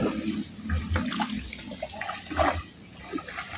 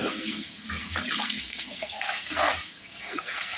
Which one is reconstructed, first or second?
second